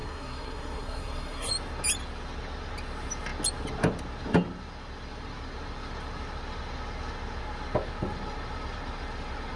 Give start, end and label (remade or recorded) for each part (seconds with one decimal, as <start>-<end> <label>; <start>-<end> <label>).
0.0-1.5 remade; 1.5-9.6 recorded